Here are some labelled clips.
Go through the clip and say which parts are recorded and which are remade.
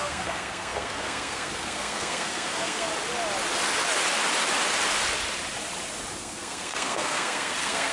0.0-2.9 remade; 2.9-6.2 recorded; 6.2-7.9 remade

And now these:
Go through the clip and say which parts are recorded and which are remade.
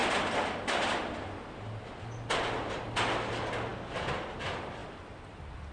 0.0-4.8 recorded; 4.8-5.7 remade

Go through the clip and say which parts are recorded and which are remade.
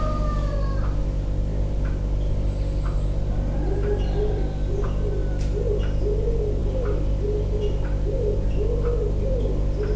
0.0-10.0 recorded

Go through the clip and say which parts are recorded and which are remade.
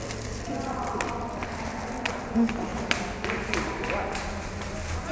0.0-5.1 recorded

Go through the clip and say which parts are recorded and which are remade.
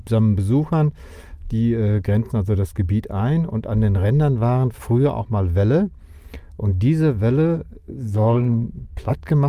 0.0-7.8 recorded; 7.8-9.1 remade; 9.1-9.5 recorded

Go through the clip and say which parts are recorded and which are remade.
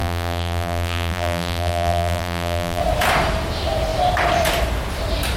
0.0-2.8 remade; 2.8-5.4 recorded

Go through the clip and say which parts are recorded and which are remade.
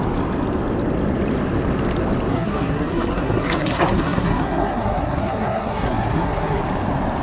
0.0-2.3 recorded; 2.3-6.6 remade; 6.6-7.2 recorded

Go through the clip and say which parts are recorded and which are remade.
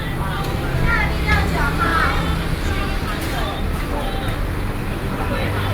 0.0-5.7 recorded